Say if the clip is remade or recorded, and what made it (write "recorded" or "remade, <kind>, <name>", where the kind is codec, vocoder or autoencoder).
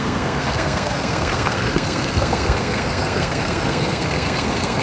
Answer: remade, codec, SNAC